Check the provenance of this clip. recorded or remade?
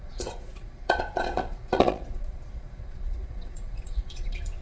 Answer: remade